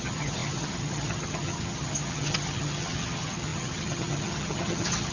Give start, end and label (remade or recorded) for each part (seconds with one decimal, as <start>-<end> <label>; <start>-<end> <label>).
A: 0.0-5.1 remade